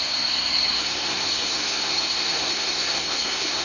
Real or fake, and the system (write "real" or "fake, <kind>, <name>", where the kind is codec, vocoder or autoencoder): fake, codec, SNAC